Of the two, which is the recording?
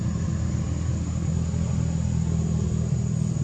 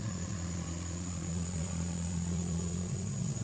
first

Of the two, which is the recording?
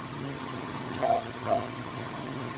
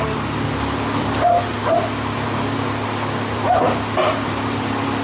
second